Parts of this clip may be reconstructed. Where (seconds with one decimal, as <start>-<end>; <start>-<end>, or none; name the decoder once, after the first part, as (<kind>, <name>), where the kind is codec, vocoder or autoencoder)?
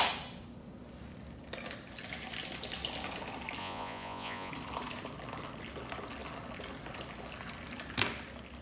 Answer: 3.6-4.5 (vocoder, Vocos)